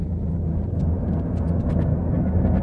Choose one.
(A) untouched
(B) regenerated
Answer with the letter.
A